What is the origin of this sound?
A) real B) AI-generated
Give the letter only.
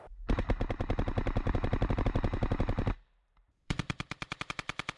B